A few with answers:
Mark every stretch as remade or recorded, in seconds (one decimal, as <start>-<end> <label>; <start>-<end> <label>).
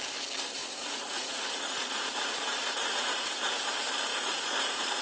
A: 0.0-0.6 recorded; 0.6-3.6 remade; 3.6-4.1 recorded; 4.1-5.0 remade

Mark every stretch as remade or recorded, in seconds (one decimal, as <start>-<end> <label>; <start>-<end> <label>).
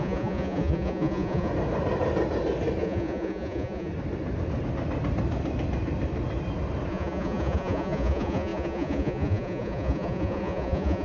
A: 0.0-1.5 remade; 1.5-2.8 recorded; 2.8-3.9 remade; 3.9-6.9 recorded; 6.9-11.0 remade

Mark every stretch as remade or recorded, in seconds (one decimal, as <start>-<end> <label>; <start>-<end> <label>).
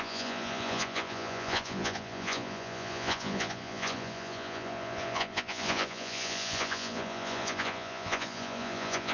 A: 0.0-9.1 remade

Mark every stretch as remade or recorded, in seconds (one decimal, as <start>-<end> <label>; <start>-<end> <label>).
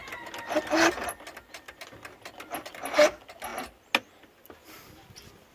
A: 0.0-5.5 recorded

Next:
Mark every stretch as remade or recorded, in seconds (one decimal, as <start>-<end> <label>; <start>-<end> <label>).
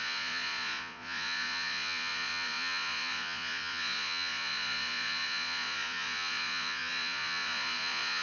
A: 0.0-8.2 remade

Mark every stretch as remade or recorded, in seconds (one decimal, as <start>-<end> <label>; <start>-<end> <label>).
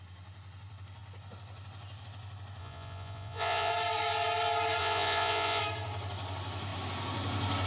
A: 0.0-2.6 recorded; 2.6-3.7 remade; 3.7-4.8 recorded; 4.8-5.6 remade; 5.6-7.7 recorded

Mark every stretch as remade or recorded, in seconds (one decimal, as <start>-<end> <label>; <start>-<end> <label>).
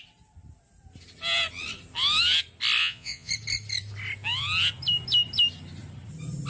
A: 0.0-2.8 recorded; 2.8-3.3 remade; 3.3-6.5 recorded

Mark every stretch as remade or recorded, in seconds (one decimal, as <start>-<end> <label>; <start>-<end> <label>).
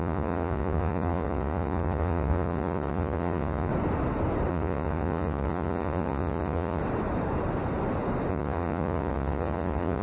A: 0.0-3.7 remade; 3.7-4.5 recorded; 4.5-6.8 remade; 6.8-8.3 recorded; 8.3-10.0 remade